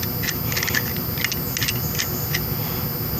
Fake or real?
real